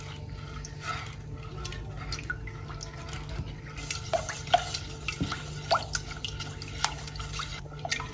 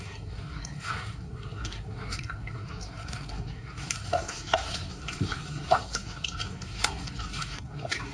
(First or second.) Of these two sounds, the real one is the first